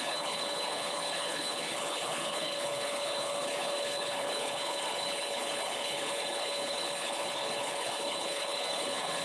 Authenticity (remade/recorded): remade